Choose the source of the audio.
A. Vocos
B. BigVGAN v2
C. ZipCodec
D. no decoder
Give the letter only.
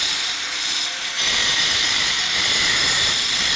B